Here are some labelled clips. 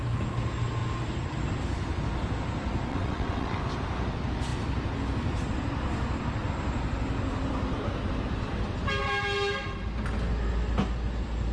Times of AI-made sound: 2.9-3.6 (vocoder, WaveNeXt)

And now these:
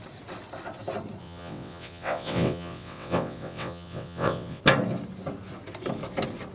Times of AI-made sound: 1.2-4.6 (vocoder, WaveNeXt)

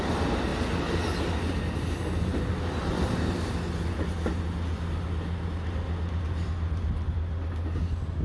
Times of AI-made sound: none